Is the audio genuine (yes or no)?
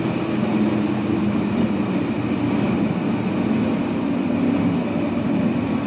yes